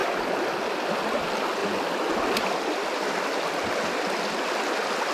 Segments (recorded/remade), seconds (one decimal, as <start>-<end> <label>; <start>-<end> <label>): 0.0-5.1 recorded